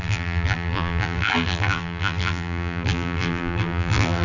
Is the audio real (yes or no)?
no